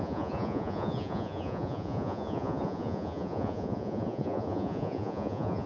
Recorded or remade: remade